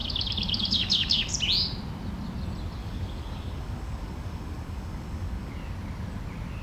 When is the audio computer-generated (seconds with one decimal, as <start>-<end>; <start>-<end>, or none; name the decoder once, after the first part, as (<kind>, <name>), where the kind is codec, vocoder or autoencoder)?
0.0-1.3 (codec, DAC); 2.8-5.5